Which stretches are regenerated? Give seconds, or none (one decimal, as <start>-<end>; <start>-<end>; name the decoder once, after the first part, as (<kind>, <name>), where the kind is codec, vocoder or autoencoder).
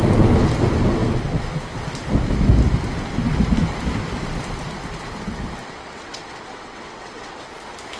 5.6-7.5 (vocoder, WaveNeXt)